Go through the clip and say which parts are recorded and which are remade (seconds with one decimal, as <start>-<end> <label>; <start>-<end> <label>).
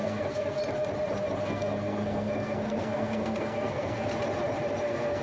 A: 0.0-0.6 remade; 0.6-1.4 recorded; 1.4-4.1 remade; 4.1-4.8 recorded; 4.8-5.2 remade